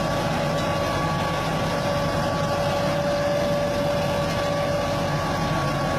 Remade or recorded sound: recorded